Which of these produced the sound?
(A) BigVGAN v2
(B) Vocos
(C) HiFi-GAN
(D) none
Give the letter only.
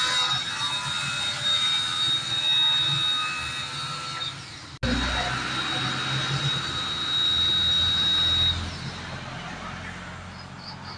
D